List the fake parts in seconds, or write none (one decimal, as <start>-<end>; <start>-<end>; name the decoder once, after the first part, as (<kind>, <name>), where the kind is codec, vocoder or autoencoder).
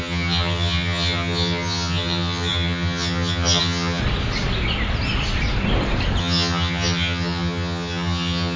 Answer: 0.0-4.0 (vocoder, HiFi-GAN); 6.2-8.6